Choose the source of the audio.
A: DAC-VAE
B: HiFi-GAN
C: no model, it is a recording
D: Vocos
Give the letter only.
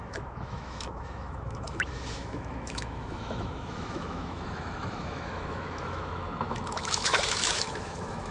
A